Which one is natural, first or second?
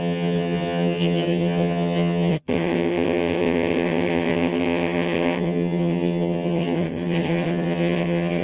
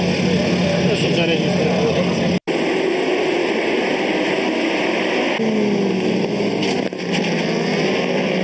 second